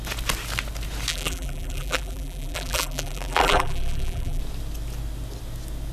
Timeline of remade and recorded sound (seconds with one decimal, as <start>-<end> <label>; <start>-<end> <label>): 0.0-1.1 recorded; 1.1-4.4 remade; 4.4-5.9 recorded

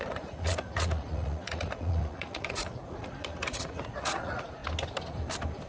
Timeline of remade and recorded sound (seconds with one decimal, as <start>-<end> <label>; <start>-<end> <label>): 0.0-4.6 remade; 4.6-5.7 recorded